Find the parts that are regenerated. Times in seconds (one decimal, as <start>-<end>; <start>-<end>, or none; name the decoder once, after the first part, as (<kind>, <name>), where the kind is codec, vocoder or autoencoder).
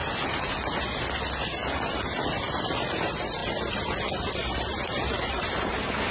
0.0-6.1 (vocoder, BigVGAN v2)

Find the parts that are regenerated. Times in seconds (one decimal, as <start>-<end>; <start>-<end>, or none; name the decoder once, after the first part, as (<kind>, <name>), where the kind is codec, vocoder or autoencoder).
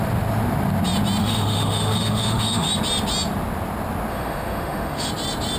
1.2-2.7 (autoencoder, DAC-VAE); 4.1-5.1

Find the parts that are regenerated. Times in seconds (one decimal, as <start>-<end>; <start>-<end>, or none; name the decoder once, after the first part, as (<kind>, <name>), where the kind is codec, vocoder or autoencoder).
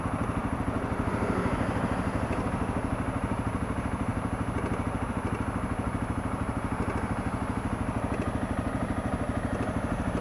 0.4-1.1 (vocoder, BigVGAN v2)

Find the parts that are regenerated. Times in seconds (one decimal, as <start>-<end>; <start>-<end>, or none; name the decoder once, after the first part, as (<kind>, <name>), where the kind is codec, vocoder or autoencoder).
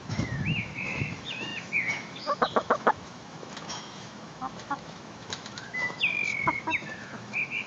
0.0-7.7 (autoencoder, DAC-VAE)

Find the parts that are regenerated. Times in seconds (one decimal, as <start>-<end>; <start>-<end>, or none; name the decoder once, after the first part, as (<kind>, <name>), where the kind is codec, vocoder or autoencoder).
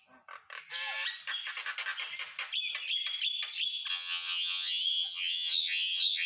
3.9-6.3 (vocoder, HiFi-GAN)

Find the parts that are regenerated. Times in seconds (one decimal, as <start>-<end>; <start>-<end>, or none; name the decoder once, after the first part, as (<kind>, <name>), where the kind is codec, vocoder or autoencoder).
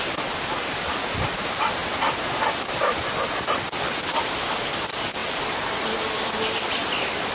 5.2-7.3 (vocoder, BigVGAN v2)